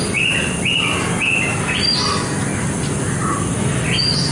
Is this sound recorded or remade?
recorded